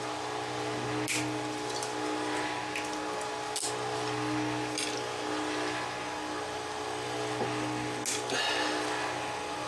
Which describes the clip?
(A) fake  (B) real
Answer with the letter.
B